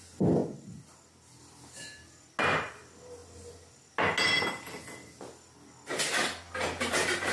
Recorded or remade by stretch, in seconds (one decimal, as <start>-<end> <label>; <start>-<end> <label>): 0.0-7.3 recorded